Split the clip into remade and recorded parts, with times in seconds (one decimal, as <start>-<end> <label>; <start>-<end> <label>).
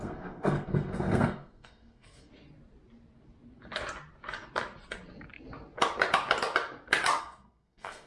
0.0-2.3 remade; 2.3-7.2 recorded; 7.2-8.1 remade